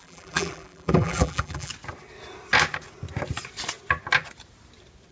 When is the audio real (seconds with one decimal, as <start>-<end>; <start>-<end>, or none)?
1.7-5.1